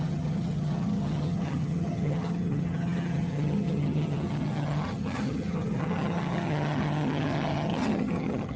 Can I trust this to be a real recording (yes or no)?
no